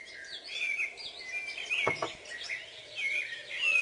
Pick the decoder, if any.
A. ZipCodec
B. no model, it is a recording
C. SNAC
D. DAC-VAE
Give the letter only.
B